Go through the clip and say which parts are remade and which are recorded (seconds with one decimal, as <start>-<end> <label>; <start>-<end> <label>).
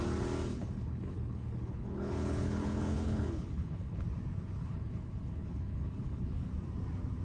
0.0-0.5 recorded; 0.5-4.0 remade; 4.0-4.6 recorded; 4.6-6.5 remade; 6.5-7.2 recorded